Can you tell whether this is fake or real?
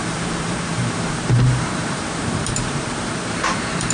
fake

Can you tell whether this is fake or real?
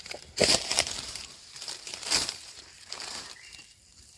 fake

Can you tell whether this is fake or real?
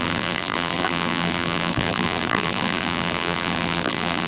fake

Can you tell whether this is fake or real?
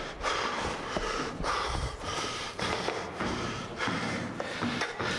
fake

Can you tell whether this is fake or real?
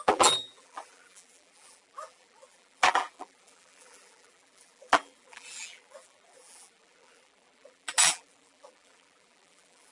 fake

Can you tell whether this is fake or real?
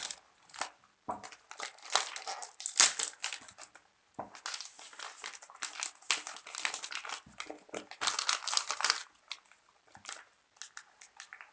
real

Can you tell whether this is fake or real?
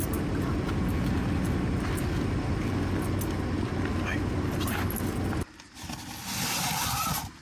real